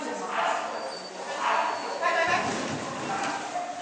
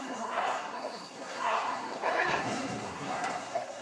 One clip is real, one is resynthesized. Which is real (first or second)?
first